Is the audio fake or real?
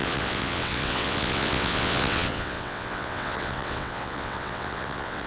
fake